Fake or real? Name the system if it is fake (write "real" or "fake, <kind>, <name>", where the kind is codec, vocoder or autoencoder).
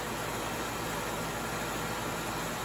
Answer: real